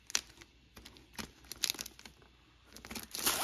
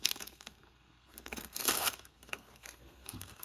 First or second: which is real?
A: first